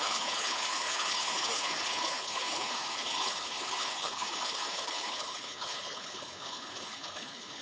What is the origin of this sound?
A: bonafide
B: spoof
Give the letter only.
B